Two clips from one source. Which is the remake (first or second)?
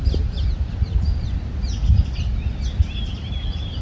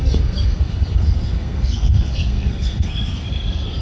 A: second